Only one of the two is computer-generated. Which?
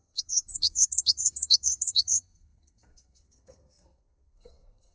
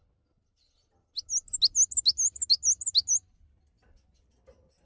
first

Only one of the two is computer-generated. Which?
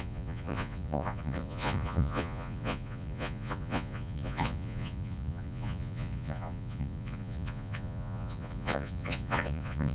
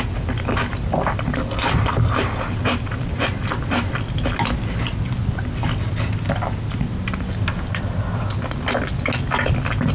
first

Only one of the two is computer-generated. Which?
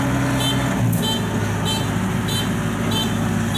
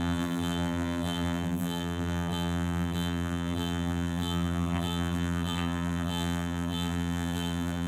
second